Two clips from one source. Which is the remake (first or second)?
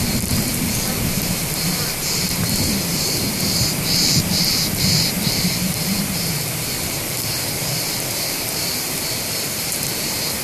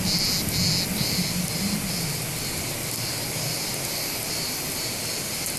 first